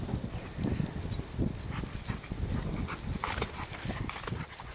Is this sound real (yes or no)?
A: yes